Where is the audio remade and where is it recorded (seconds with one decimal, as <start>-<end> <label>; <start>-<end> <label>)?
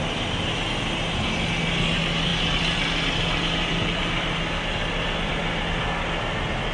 0.0-6.7 recorded